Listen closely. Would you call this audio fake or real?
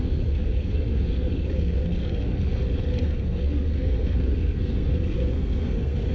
fake